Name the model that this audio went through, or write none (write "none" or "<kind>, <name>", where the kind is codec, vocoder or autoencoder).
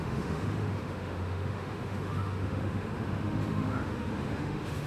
autoencoder, DAC-VAE